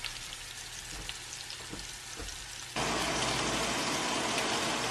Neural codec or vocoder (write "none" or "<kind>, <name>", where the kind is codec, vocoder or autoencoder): none